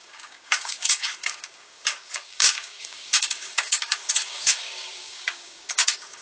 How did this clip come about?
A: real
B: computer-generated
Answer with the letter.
B